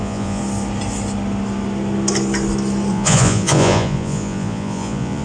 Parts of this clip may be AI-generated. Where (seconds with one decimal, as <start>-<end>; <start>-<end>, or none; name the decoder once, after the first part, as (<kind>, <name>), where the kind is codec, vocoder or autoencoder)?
0.0-0.4 (vocoder, Vocos); 2.9-5.2